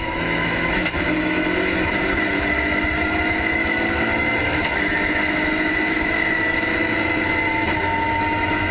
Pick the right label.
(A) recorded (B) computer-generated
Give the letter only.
B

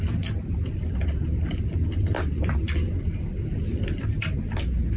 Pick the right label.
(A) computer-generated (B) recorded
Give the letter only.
B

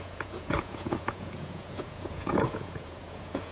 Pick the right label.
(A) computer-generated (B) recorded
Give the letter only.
A